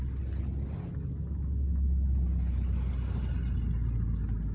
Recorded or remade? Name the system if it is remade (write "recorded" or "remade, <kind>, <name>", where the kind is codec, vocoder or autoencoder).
recorded